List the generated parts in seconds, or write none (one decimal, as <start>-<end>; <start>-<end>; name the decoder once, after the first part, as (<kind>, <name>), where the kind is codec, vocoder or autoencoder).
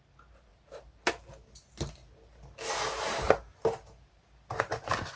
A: none